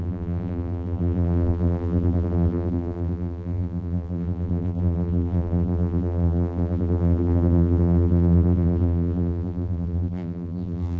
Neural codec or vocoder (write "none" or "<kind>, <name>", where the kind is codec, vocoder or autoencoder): vocoder, BigVGAN v2